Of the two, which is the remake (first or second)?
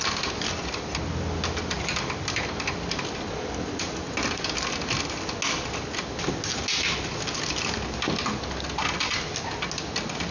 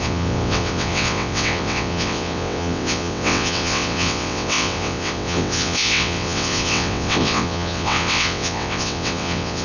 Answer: second